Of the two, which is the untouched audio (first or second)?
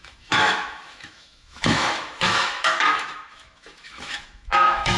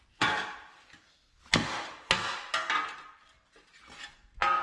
second